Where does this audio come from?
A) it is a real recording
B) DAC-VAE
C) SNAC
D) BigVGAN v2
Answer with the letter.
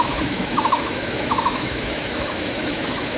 B